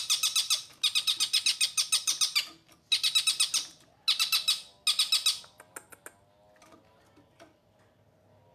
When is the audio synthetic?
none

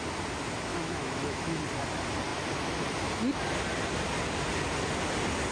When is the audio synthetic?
0.7-1.6

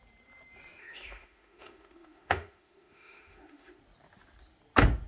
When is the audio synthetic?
0.8-3.8

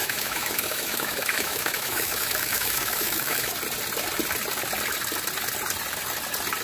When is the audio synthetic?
0.0-3.5

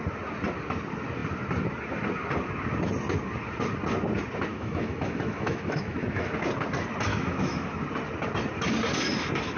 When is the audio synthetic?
4.5-6.3; 7.1-7.7

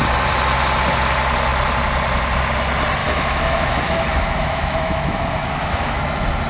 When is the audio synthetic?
3.0-6.0

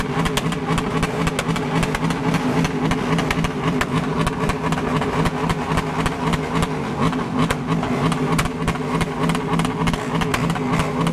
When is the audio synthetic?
none